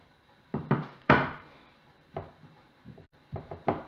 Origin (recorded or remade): remade